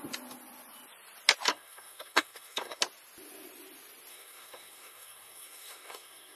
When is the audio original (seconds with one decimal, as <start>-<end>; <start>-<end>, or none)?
0.0-1.5; 2.8-4.1